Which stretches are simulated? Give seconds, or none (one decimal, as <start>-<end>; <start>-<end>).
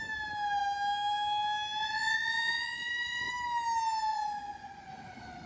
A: 1.8-3.3; 4.1-4.8